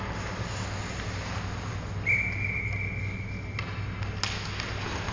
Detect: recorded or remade recorded